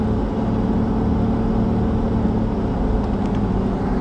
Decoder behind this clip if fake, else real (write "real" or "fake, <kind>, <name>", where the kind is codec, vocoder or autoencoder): real